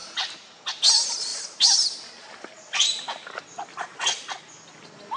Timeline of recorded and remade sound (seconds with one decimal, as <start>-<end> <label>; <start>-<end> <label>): 0.0-5.2 recorded